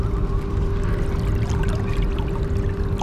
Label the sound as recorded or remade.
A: recorded